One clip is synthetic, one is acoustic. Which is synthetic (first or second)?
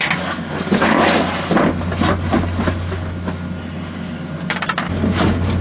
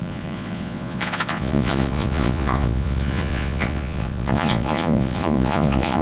second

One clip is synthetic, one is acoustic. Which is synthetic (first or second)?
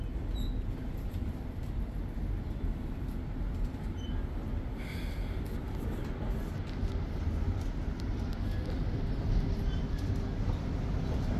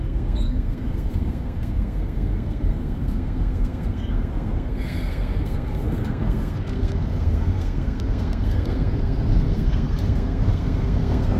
second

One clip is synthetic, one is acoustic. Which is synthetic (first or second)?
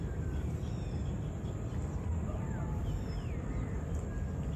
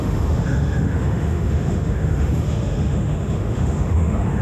second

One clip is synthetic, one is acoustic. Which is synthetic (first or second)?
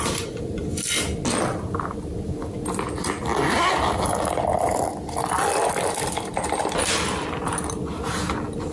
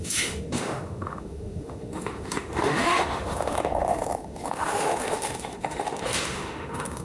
second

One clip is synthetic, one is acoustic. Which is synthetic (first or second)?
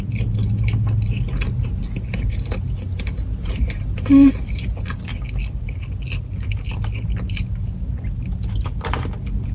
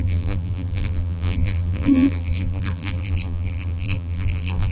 second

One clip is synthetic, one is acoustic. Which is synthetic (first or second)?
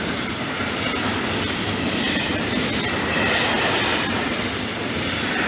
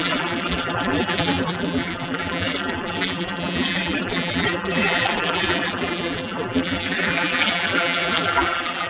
second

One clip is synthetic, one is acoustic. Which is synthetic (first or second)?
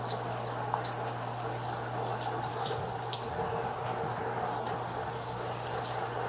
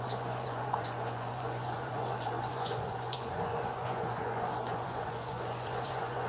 second